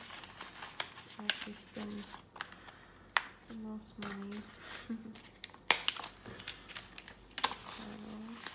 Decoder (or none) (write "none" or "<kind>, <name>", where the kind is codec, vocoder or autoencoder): none